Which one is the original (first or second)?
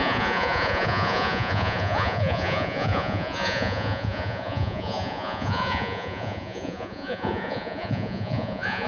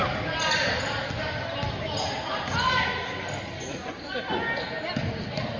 second